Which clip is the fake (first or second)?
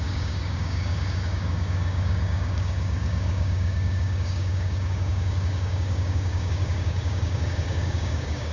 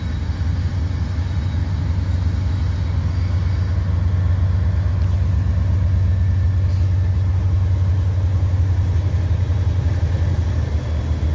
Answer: first